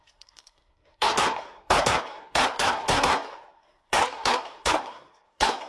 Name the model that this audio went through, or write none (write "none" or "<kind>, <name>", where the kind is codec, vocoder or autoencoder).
codec, SNAC